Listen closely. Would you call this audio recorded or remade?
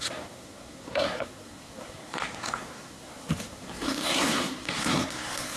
remade